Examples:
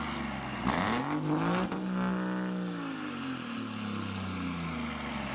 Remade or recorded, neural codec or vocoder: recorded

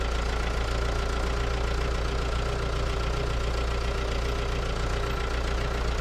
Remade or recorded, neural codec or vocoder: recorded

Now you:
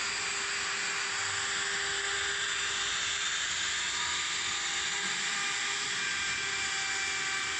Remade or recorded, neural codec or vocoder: recorded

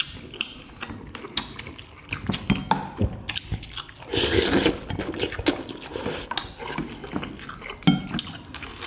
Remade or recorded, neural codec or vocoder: recorded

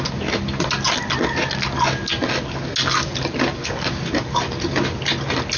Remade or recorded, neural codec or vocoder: recorded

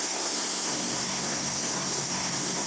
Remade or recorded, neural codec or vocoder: remade, codec, SNAC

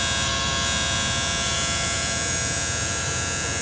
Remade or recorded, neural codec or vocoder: remade, vocoder, Vocos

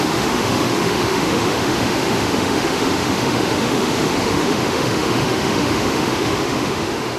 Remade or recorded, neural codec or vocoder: remade, autoencoder, DAC-VAE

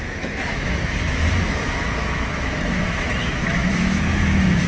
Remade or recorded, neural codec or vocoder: remade, autoencoder, DAC-VAE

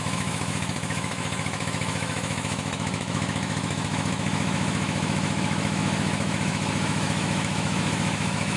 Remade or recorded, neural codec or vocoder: remade, autoencoder, DAC-VAE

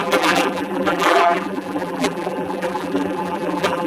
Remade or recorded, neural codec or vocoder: remade, vocoder, BigVGAN v2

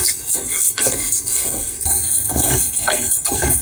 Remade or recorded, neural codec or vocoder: remade, codec, SNAC